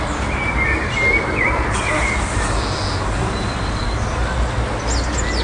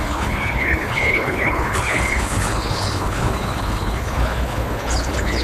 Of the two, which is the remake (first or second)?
second